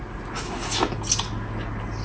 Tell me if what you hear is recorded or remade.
recorded